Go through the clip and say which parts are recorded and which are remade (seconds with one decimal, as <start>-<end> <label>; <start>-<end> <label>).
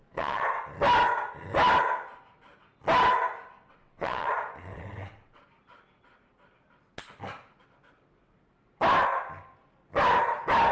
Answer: 0.0-0.6 remade; 0.6-3.7 recorded; 3.7-4.3 remade; 4.3-4.7 recorded; 4.7-5.4 remade; 5.4-10.7 recorded